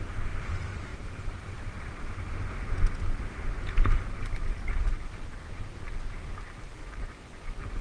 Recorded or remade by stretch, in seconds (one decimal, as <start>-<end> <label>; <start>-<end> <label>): 0.0-6.8 recorded; 6.8-7.8 remade